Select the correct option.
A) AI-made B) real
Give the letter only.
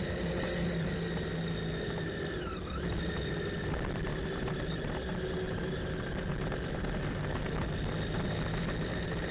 B